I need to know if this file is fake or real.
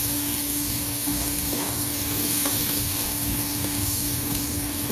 fake